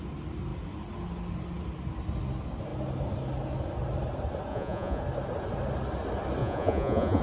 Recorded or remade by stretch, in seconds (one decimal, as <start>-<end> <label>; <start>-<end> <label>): 0.0-4.5 recorded; 4.5-5.0 remade; 5.0-6.4 recorded; 6.4-7.2 remade